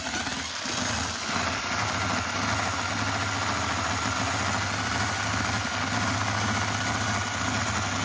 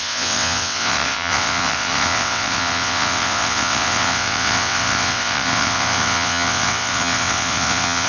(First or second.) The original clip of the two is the first